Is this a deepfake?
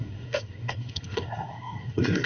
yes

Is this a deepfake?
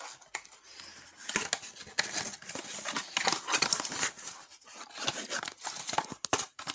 no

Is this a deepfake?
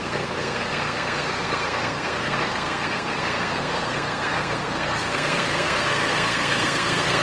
yes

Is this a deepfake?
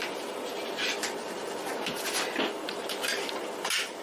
no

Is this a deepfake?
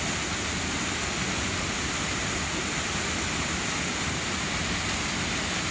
no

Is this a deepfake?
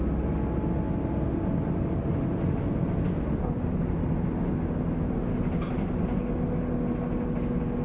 no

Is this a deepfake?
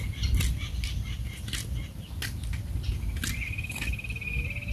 no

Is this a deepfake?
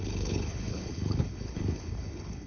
yes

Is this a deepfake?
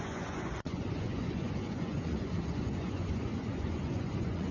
yes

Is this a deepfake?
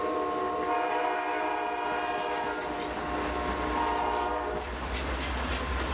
no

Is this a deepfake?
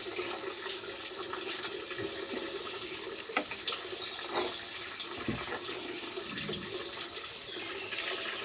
no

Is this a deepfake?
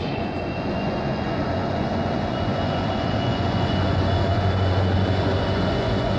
yes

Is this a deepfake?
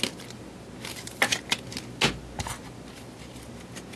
no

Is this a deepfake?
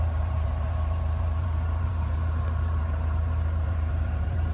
yes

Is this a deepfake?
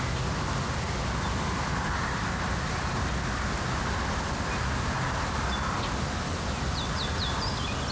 no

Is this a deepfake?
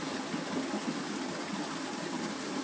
no